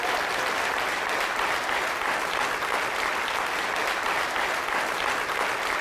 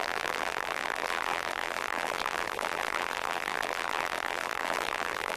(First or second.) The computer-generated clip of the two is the second